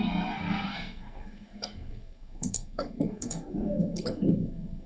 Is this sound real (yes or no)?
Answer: no